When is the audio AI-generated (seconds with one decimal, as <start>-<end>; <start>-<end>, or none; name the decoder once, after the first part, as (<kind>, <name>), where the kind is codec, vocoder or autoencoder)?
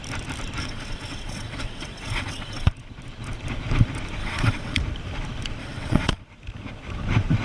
0.6-2.7 (vocoder, WaveNeXt); 4.2-4.8; 5.6-6.2